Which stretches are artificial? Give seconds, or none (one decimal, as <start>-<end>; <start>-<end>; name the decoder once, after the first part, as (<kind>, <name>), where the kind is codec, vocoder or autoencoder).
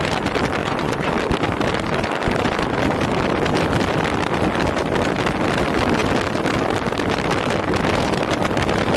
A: 0.6-1.1 (vocoder, Vocos)